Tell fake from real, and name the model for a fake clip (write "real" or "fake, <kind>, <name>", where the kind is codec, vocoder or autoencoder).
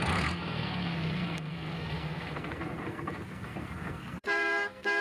fake, codec, SNAC